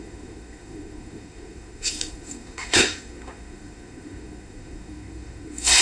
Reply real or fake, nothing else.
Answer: fake